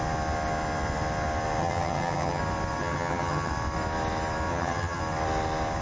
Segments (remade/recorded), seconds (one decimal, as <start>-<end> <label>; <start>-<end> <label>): 0.0-1.6 recorded; 1.6-2.4 remade; 2.4-2.8 recorded; 2.8-3.5 remade; 3.5-4.5 recorded; 4.5-5.0 remade; 5.0-5.8 recorded